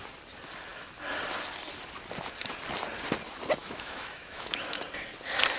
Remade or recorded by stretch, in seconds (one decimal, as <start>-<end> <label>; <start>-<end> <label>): 0.0-3.6 recorded; 3.6-4.8 remade; 4.8-5.6 recorded